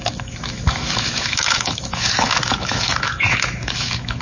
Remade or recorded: remade